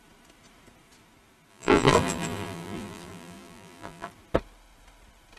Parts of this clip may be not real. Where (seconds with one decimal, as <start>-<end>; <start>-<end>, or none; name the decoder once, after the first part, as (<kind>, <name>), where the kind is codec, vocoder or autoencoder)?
1.5-4.1 (vocoder, BigVGAN v2)